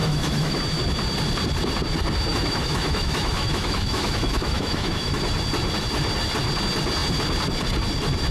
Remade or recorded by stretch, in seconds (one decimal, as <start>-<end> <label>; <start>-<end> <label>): 0.0-0.6 remade; 0.6-2.3 recorded; 2.3-5.2 remade; 5.2-8.3 recorded